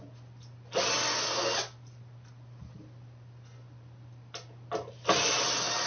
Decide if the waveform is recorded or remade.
recorded